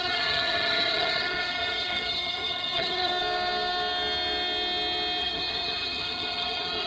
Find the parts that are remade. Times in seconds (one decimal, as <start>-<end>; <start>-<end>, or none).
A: 0.0-3.1; 5.2-6.9